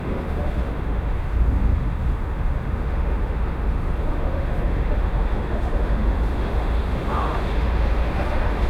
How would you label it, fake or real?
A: fake